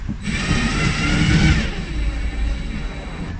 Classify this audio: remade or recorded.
recorded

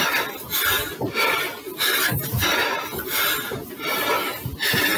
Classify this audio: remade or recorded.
recorded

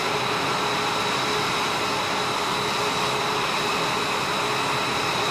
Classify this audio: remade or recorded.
recorded